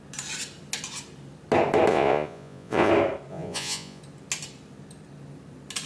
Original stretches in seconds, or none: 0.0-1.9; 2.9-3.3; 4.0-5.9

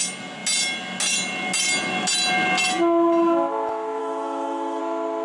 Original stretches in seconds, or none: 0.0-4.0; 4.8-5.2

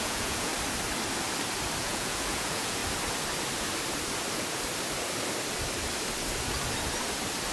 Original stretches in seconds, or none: 0.5-1.8; 2.8-7.5

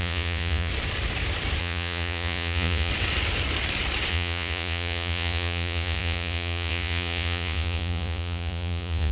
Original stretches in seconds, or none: 0.7-1.6; 2.9-4.1

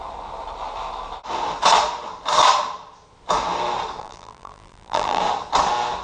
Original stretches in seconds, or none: 0.0-4.0; 5.2-6.0